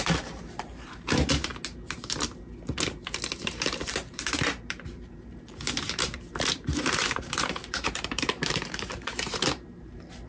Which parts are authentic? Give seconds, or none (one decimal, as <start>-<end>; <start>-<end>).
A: 1.5-3.4